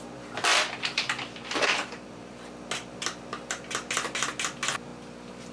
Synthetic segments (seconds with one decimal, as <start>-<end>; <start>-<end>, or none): 0.5-2.4